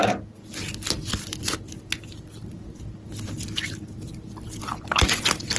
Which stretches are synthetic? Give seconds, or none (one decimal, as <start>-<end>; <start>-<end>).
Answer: 1.0-2.8; 3.9-5.1